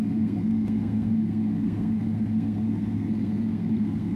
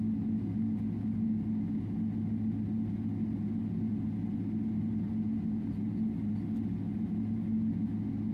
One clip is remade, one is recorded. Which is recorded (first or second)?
second